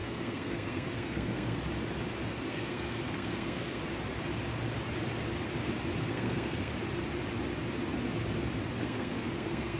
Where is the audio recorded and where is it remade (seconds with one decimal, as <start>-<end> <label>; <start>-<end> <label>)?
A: 0.0-1.6 remade; 1.6-2.5 recorded; 2.5-3.8 remade; 3.8-6.0 recorded; 6.0-6.7 remade; 6.7-8.8 recorded; 8.8-9.8 remade